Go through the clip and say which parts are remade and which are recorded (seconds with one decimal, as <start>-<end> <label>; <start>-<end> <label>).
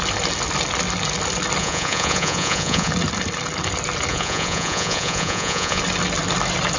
0.0-1.6 recorded; 1.6-2.9 remade; 2.9-4.1 recorded; 4.1-5.8 remade; 5.8-6.8 recorded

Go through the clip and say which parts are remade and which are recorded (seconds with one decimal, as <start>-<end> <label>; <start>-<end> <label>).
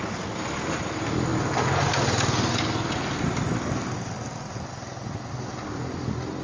0.0-6.4 recorded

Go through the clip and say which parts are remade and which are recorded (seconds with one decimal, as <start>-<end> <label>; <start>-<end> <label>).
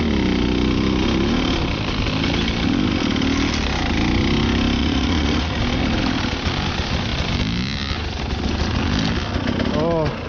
0.0-4.8 recorded; 4.8-5.6 remade; 5.6-10.3 recorded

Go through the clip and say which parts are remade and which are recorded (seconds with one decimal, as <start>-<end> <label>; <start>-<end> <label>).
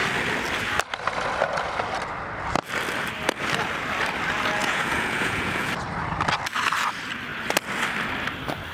0.0-4.6 recorded; 4.6-5.7 remade; 5.7-8.7 recorded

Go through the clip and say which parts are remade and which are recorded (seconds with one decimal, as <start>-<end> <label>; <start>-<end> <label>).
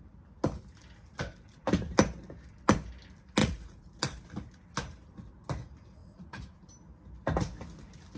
0.0-3.4 recorded; 3.4-4.0 remade; 4.0-6.0 recorded; 6.0-6.6 remade; 6.6-8.2 recorded